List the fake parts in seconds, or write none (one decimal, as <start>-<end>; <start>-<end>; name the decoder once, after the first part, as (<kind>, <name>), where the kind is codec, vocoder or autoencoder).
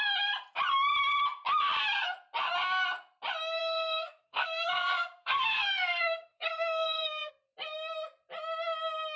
3.6-7.3 (codec, SNAC)